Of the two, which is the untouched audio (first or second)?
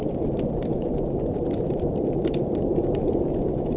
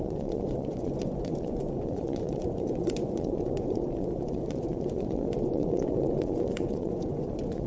first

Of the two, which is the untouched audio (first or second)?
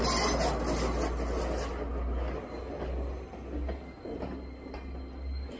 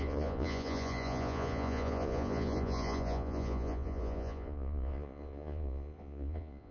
first